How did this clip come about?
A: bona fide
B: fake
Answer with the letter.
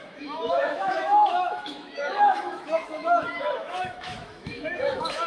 B